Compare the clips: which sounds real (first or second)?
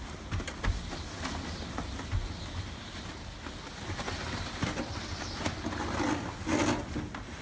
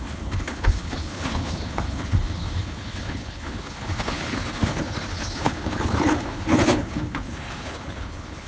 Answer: first